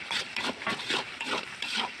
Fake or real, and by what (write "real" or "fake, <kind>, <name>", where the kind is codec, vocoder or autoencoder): fake, vocoder, BigVGAN v2